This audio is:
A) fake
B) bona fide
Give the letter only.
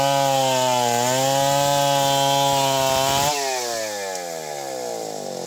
B